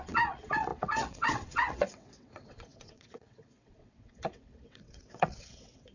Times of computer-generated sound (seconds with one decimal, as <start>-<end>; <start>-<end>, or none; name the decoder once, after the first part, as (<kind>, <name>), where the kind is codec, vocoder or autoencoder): 0.0-5.9 (vocoder, WaveNeXt)